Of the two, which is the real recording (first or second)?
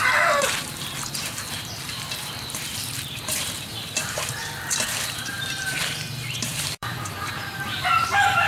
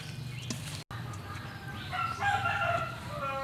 second